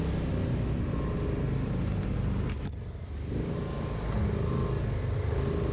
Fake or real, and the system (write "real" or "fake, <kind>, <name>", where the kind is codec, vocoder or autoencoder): real